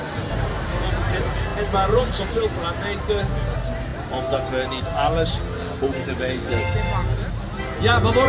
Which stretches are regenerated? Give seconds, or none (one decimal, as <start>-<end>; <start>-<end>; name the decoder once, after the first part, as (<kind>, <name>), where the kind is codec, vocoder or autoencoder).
none